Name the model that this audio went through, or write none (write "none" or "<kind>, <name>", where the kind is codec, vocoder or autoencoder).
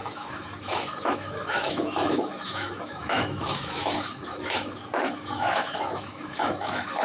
autoencoder, DAC-VAE